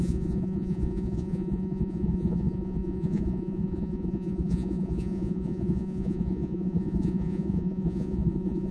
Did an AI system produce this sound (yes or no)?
yes